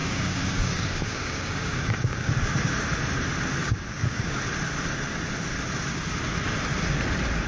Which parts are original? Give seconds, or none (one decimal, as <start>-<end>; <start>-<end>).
2.3-3.6; 4.4-7.5